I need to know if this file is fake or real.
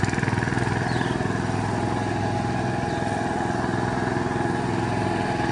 real